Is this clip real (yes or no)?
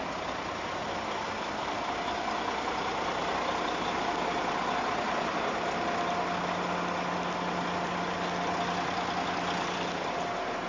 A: yes